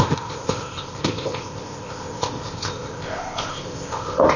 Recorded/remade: remade